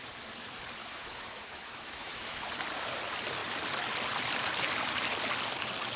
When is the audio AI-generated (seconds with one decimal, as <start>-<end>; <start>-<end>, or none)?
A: 0.8-2.4